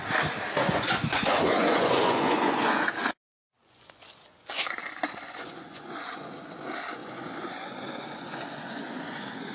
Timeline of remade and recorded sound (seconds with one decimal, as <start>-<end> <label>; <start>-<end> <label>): 0.0-0.6 recorded; 0.6-2.9 remade; 2.9-3.3 recorded; 3.3-6.3 remade; 6.3-7.0 recorded; 7.0-9.5 remade